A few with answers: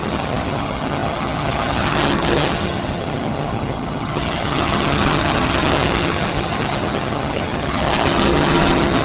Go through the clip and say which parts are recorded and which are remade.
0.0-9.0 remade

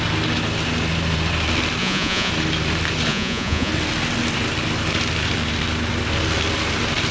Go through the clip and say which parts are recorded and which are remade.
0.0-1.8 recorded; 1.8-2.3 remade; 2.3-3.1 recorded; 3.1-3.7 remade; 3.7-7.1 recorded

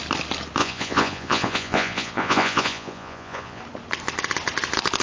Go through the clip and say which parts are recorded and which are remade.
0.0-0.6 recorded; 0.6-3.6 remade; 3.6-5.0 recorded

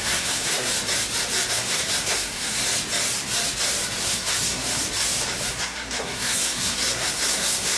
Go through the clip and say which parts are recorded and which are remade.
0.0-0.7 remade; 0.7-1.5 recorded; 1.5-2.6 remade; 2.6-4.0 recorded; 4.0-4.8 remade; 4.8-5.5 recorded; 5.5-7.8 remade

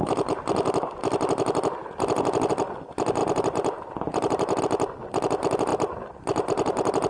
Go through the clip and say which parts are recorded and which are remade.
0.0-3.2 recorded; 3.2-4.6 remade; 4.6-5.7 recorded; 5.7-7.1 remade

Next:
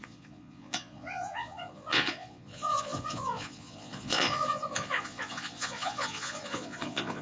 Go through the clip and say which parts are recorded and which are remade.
0.0-7.2 remade

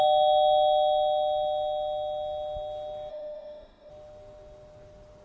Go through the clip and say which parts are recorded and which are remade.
0.0-3.1 recorded; 3.1-3.9 remade; 3.9-5.2 recorded